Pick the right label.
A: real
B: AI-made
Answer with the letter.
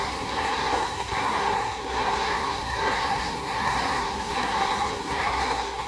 B